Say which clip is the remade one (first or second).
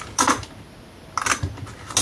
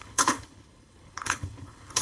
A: second